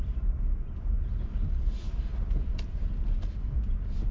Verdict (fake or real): real